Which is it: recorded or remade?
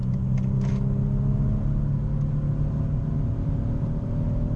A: recorded